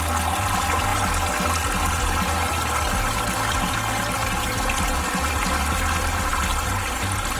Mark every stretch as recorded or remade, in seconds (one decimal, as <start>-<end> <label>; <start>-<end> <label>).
0.0-7.4 recorded